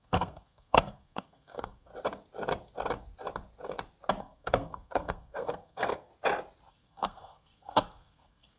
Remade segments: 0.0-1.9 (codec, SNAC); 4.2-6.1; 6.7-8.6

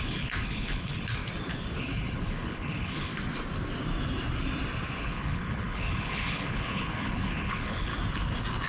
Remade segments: 0.0-1.2 (codec, HILCodec); 1.8-3.1; 5.0-7.9

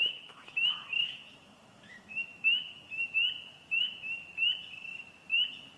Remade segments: 0.0-3.0 (autoencoder, DAC-VAE); 3.8-4.3

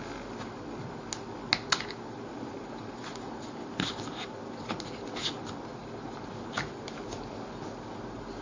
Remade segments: none

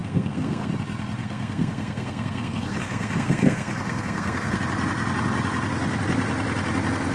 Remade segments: 0.0-0.7 (codec, SNAC); 1.2-4.6

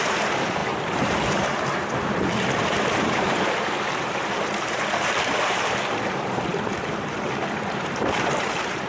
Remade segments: 0.0-8.9 (vocoder, BigVGAN v2)

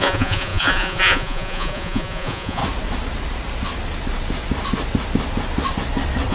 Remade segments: 0.0-2.6 (vocoder, Vocos)